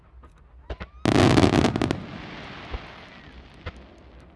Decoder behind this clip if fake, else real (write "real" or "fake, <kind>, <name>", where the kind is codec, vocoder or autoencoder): real